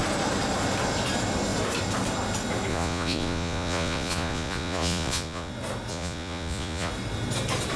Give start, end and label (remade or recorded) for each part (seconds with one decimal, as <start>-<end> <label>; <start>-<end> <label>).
0.0-2.7 recorded; 2.7-5.5 remade; 5.5-5.9 recorded; 5.9-6.9 remade; 6.9-7.8 recorded